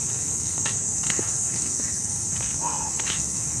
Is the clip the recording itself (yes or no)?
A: no